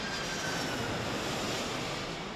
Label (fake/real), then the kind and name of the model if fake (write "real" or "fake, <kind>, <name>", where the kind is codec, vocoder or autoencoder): real